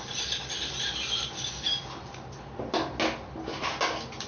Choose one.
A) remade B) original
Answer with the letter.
B